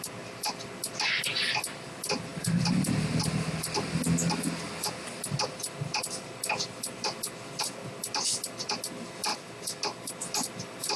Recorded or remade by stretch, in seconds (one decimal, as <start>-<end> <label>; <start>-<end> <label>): 0.0-11.0 recorded